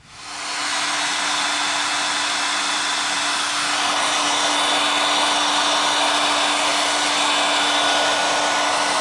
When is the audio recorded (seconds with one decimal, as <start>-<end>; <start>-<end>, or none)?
0.0-9.0